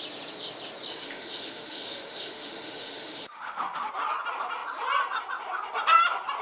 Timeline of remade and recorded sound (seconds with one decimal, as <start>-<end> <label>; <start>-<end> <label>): 0.0-0.9 recorded; 0.9-3.9 remade; 3.9-6.4 recorded